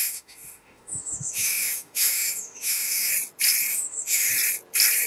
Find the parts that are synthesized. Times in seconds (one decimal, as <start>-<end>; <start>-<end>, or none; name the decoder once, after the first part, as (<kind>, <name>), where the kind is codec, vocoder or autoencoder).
0.0-3.1 (autoencoder, DAC-VAE); 3.7-4.3